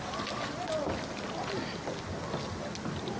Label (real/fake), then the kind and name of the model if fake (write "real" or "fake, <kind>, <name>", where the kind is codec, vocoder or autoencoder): real